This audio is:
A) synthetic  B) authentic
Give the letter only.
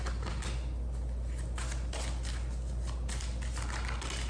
B